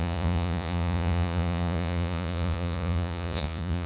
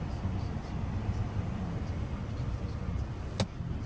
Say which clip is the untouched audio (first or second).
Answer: second